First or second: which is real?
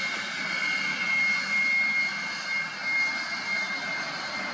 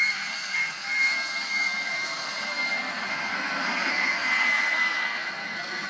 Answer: first